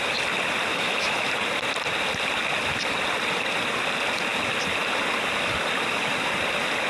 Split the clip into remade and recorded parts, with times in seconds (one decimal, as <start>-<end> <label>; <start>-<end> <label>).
0.0-0.7 recorded; 0.7-1.3 remade; 1.3-6.9 recorded